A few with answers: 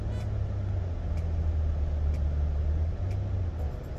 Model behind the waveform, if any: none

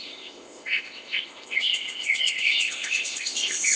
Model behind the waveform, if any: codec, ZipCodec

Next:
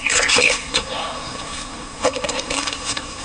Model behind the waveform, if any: codec, SNAC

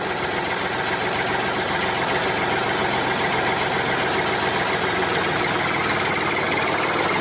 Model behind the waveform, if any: none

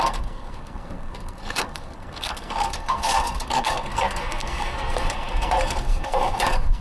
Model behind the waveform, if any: codec, SNAC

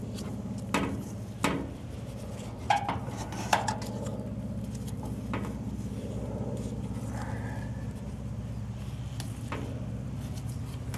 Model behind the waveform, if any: none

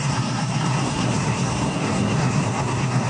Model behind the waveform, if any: codec, SNAC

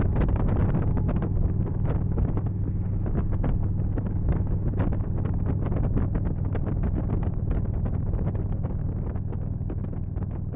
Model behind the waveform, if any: none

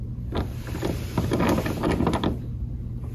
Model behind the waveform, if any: none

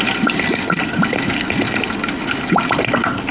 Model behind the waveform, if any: none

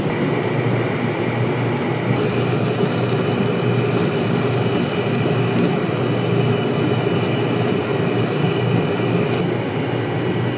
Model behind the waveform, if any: none